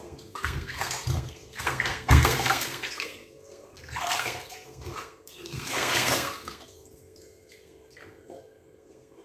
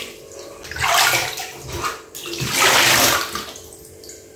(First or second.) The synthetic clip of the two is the first